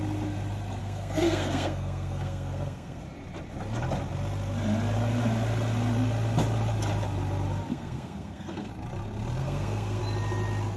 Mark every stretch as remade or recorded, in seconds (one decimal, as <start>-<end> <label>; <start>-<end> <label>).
0.0-0.8 recorded; 0.8-3.0 remade; 3.0-7.7 recorded; 7.7-8.7 remade; 8.7-9.4 recorded; 9.4-10.0 remade; 10.0-10.8 recorded